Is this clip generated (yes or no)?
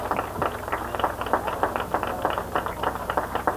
no